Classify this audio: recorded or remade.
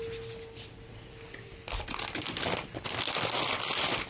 recorded